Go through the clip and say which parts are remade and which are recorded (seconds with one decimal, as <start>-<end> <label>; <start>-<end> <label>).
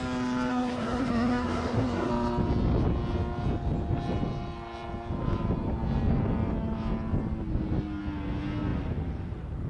0.0-0.5 recorded; 0.5-2.1 remade; 2.1-9.7 recorded